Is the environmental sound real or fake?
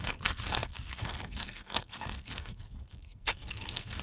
fake